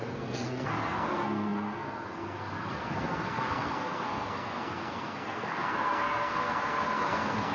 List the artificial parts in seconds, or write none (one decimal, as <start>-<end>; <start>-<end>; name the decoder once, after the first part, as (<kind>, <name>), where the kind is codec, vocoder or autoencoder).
0.0-7.5 (codec, SNAC)